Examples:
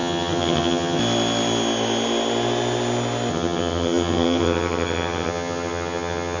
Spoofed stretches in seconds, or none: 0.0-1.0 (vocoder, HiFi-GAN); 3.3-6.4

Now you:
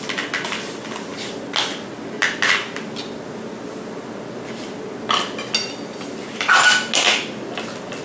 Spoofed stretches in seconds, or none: none

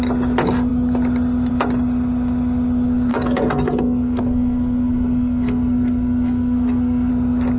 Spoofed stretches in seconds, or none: 3.1-7.1 (codec, SNAC)